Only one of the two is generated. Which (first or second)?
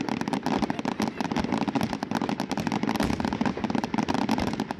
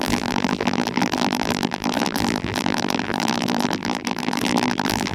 second